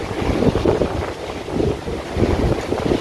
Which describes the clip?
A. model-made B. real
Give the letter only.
B